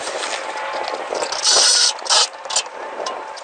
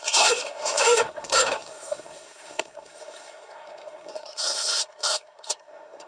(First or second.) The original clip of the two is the first